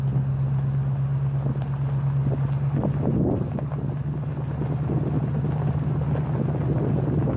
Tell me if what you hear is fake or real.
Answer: real